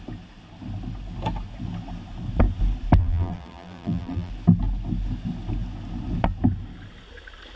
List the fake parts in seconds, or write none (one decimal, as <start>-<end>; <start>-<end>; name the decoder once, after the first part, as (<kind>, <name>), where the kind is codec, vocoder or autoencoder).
3.0-4.3 (vocoder, BigVGAN v2)